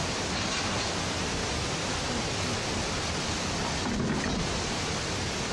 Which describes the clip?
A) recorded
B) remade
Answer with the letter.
A